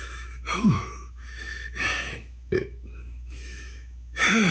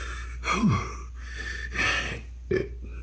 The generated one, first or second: first